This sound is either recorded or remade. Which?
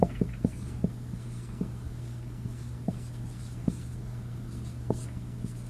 remade